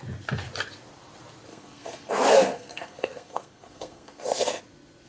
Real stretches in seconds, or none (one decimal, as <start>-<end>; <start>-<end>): 0.0-1.5; 4.6-5.1